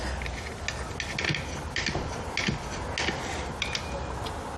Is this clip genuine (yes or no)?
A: yes